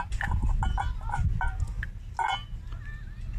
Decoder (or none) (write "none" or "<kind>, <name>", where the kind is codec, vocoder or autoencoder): none